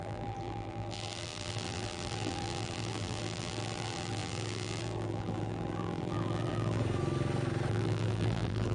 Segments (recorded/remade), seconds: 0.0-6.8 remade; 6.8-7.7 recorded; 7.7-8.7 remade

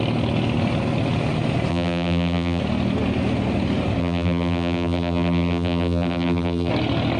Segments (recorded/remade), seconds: 0.0-1.7 recorded; 1.7-2.6 remade; 2.6-4.0 recorded; 4.0-6.7 remade; 6.7-7.2 recorded

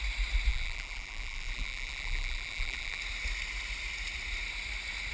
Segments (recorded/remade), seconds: 0.0-0.5 recorded; 0.5-3.0 remade; 3.0-5.1 recorded

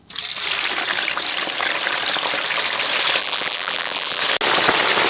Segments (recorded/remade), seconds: 0.0-3.2 recorded; 3.2-4.2 remade; 4.2-5.1 recorded

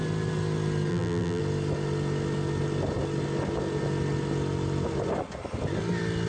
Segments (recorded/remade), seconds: 0.0-0.9 recorded; 0.9-1.4 remade; 1.4-6.3 recorded